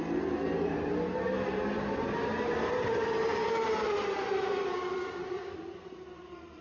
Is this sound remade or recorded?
remade